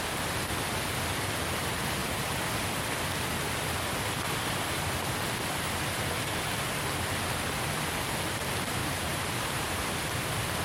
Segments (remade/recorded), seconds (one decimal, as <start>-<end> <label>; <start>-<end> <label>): 0.0-8.8 recorded; 8.8-9.8 remade; 9.8-10.6 recorded